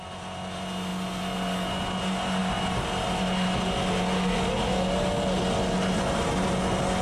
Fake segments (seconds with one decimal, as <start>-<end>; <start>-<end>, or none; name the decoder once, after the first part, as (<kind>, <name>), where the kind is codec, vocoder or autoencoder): none